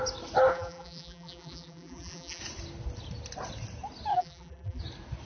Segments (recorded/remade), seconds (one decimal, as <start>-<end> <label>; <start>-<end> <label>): 0.0-0.5 recorded; 0.5-2.4 remade; 2.4-4.1 recorded; 4.1-4.8 remade; 4.8-5.2 recorded